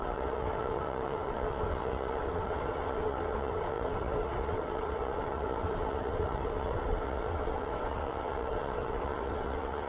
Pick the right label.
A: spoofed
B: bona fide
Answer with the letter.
A